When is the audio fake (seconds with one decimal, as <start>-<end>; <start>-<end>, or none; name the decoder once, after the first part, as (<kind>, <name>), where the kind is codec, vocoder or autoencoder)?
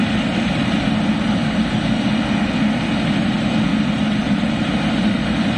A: none